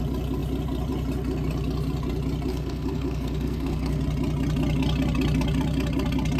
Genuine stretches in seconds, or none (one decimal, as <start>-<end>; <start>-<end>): 0.0-2.5; 4.0-6.4